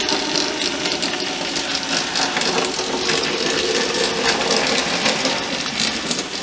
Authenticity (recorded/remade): recorded